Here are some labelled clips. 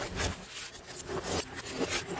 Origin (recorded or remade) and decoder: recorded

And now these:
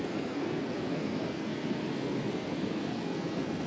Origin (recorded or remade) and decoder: remade, codec, SNAC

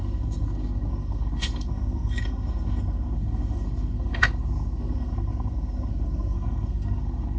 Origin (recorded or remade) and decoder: remade, codec, SNAC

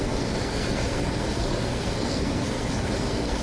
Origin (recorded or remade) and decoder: remade, codec, SNAC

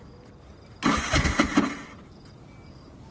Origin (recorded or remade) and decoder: recorded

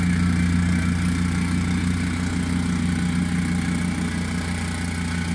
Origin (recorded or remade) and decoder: recorded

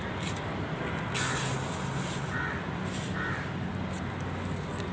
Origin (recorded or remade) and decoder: recorded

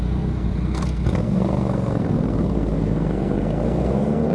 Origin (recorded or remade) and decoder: remade, codec, SNAC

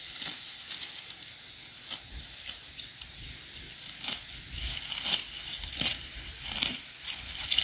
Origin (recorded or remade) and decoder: recorded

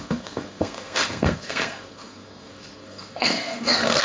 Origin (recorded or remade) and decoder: remade, codec, SNAC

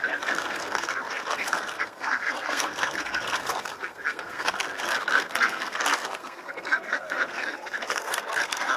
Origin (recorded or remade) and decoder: remade, codec, SNAC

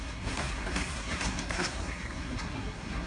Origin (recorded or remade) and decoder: remade, codec, SNAC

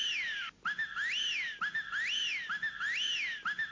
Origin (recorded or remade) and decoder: recorded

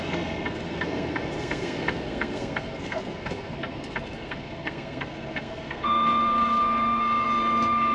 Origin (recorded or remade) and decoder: remade, codec, SNAC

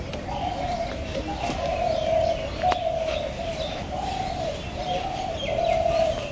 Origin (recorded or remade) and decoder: recorded